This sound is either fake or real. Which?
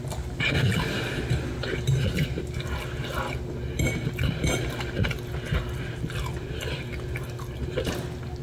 real